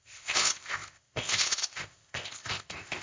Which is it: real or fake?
fake